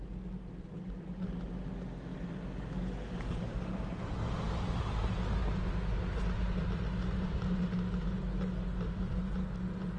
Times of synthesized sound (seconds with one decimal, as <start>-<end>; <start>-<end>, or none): none